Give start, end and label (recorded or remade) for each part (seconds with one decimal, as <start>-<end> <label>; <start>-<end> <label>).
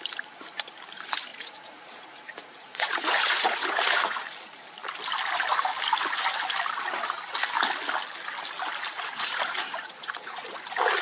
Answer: 0.0-1.3 recorded; 1.3-4.2 remade; 4.2-8.9 recorded; 8.9-10.5 remade; 10.5-11.0 recorded